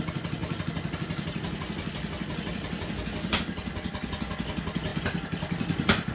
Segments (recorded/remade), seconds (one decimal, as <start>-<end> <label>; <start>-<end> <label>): 0.0-6.1 recorded